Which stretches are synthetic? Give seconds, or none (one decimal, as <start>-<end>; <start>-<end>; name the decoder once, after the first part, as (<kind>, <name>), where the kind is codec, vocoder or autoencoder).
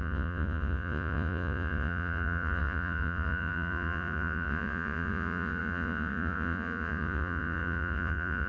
0.0-8.5 (vocoder, Vocos)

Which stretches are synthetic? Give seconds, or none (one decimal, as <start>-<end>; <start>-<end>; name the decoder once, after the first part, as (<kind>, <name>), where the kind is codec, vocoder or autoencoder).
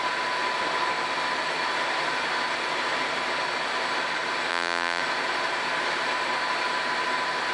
4.5-5.0 (vocoder, BigVGAN v2)